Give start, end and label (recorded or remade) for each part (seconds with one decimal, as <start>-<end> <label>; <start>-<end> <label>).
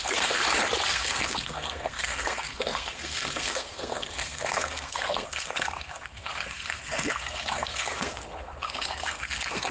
0.0-0.4 remade; 0.4-0.9 recorded; 0.9-9.7 remade